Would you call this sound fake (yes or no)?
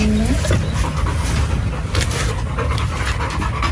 no